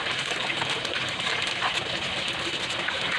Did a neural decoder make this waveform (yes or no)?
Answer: no